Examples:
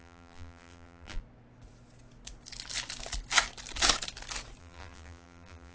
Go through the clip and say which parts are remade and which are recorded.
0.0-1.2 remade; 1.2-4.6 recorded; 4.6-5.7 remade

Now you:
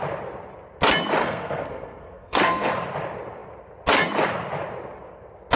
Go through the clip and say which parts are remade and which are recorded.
0.0-1.2 recorded; 1.2-2.7 remade; 2.7-5.6 recorded

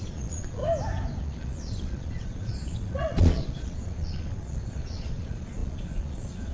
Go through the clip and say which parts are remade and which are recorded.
0.0-0.6 remade; 0.6-1.2 recorded; 1.2-6.5 remade

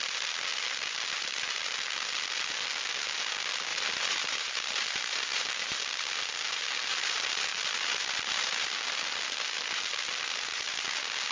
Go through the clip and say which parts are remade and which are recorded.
0.0-3.7 recorded; 3.7-5.5 remade; 5.5-6.9 recorded; 6.9-8.7 remade; 8.7-11.3 recorded

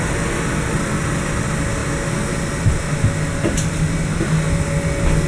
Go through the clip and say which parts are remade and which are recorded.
0.0-5.3 recorded

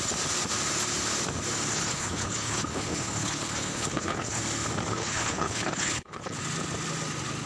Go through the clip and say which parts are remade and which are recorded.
0.0-1.7 recorded; 1.7-4.4 remade; 4.4-4.9 recorded; 4.9-6.4 remade; 6.4-7.5 recorded

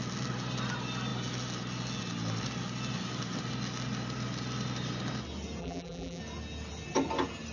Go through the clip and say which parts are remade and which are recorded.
0.0-5.6 recorded; 5.6-6.2 remade; 6.2-7.5 recorded